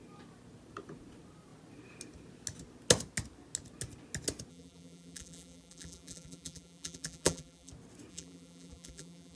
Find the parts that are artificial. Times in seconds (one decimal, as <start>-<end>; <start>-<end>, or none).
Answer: 4.5-7.7; 8.1-9.4